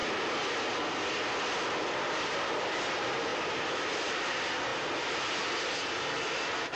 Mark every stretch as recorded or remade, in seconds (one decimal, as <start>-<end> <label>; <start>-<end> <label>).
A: 0.0-1.8 recorded; 1.8-6.8 remade